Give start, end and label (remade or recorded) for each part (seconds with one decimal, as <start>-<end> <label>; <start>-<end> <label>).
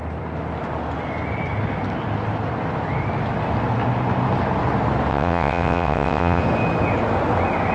0.0-5.1 recorded; 5.1-6.4 remade; 6.4-7.7 recorded